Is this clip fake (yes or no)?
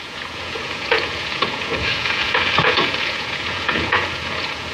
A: yes